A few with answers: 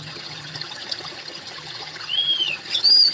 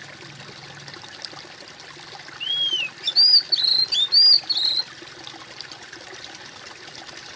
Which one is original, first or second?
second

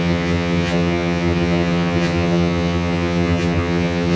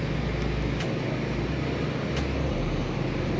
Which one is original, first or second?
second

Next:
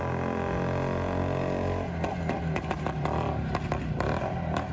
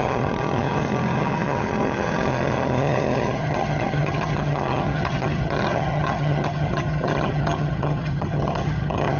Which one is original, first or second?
first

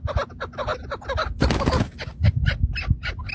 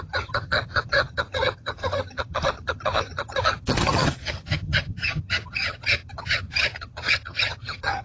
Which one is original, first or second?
first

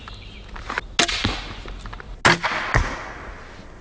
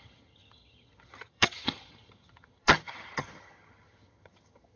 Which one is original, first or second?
first